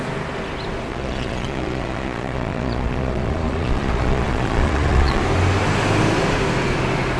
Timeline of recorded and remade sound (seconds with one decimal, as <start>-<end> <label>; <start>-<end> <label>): 0.0-0.9 recorded; 0.9-5.2 remade; 5.2-7.2 recorded

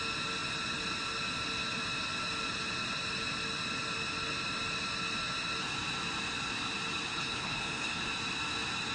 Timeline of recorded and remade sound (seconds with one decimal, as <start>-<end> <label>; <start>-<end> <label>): 0.0-7.1 recorded; 7.1-8.0 remade; 8.0-8.9 recorded